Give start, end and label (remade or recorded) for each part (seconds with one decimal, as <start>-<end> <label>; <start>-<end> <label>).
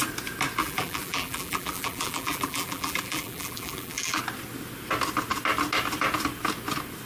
0.0-0.6 recorded; 0.6-4.2 remade; 4.2-7.1 recorded